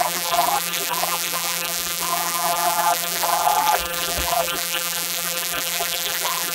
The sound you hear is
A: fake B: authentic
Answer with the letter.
A